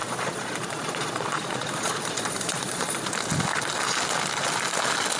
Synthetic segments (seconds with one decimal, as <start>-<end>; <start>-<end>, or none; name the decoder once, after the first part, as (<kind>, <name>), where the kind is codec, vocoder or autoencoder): 0.0-3.1 (vocoder, Vocos)